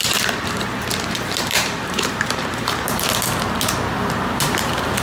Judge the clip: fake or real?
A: fake